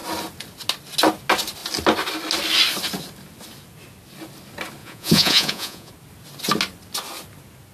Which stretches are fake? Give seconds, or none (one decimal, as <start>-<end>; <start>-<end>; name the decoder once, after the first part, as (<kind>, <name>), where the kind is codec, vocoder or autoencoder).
4.8-5.9 (vocoder, Vocos)